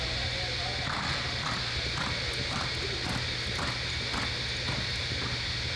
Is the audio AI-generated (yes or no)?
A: no